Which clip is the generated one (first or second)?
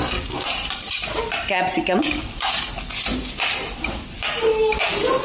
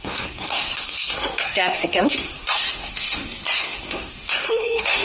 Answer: second